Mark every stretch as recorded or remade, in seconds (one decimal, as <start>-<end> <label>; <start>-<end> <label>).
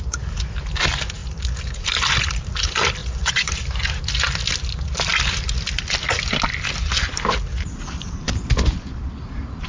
0.0-3.0 recorded; 3.0-3.5 remade; 3.5-9.7 recorded